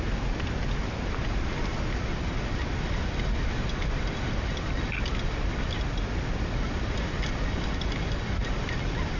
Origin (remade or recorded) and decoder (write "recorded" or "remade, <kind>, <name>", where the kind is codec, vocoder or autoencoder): recorded